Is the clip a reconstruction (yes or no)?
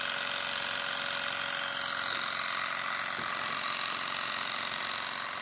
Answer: no